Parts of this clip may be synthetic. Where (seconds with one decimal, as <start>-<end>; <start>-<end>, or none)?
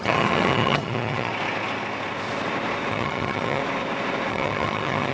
0.0-1.3; 2.9-3.6; 4.3-5.1